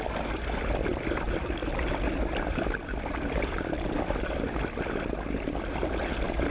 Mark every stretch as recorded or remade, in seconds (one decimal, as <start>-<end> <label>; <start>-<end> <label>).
0.0-6.5 recorded